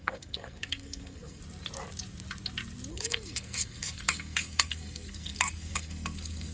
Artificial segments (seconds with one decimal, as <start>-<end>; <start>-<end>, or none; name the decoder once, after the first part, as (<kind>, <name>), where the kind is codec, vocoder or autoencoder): 0.0-1.4 (codec, SNAC); 2.9-6.5